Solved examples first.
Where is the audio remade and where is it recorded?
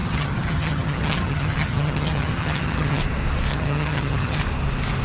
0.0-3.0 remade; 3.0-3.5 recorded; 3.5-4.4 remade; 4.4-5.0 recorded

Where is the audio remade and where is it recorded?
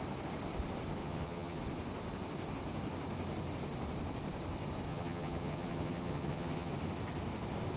0.0-1.0 recorded; 1.0-1.6 remade; 1.6-4.9 recorded; 4.9-6.7 remade; 6.7-7.8 recorded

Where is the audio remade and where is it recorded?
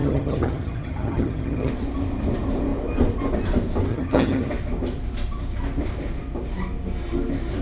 0.0-1.7 remade; 1.7-3.9 recorded; 3.9-4.5 remade; 4.5-7.6 recorded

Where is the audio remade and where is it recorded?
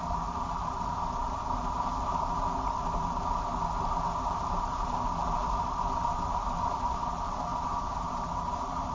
0.0-8.9 recorded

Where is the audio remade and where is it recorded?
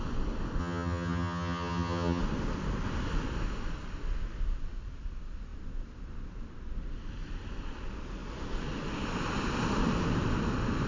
0.0-0.6 recorded; 0.6-2.2 remade; 2.2-10.9 recorded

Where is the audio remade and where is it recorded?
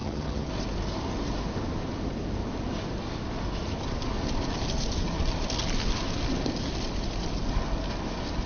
0.0-0.5 remade; 0.5-8.5 recorded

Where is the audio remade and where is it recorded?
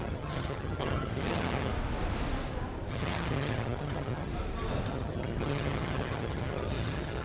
0.0-1.7 remade; 1.7-2.9 recorded; 2.9-4.3 remade; 4.3-4.9 recorded; 4.9-7.2 remade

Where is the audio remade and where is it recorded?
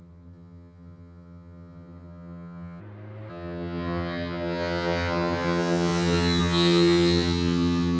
0.0-2.8 remade; 2.8-3.3 recorded; 3.3-8.0 remade